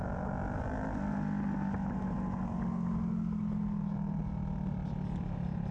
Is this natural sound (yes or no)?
yes